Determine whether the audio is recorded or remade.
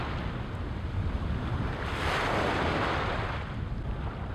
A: recorded